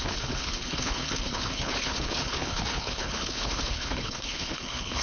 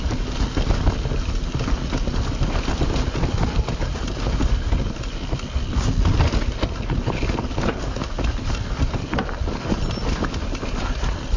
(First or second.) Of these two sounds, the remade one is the first